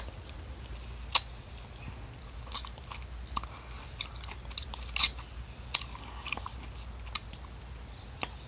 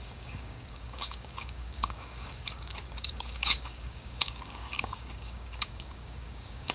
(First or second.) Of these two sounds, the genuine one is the first